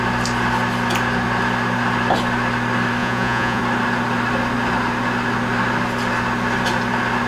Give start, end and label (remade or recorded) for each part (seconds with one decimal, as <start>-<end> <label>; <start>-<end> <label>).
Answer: 0.0-3.0 recorded; 3.0-3.6 remade; 3.6-7.3 recorded